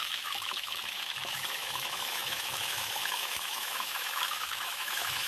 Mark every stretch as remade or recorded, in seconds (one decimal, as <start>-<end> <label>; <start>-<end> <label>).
0.0-5.3 remade